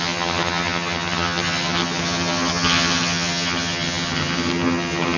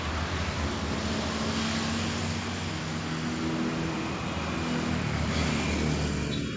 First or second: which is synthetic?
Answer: first